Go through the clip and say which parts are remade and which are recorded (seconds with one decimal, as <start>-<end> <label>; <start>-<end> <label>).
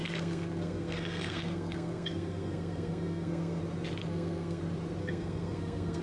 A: 0.0-3.6 remade; 3.6-4.0 recorded; 4.0-4.6 remade; 4.6-5.0 recorded; 5.0-6.0 remade